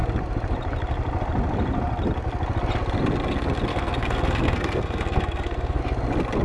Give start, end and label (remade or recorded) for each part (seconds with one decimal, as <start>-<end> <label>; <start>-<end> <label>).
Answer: 0.0-3.7 recorded; 3.7-5.8 remade; 5.8-6.4 recorded